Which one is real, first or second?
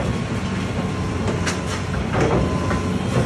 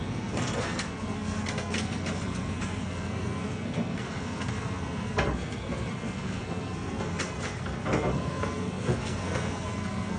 first